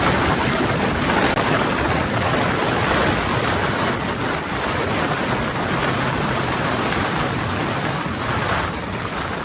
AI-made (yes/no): yes